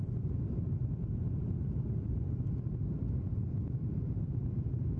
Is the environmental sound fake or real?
fake